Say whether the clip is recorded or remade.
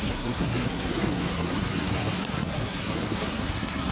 remade